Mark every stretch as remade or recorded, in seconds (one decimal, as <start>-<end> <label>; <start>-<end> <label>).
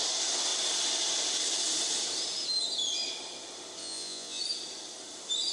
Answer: 0.0-3.8 recorded; 3.8-4.4 remade; 4.4-5.5 recorded